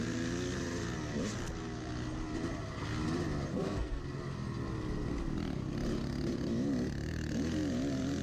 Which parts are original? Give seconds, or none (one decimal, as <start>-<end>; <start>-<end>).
0.0-3.5; 4.0-8.2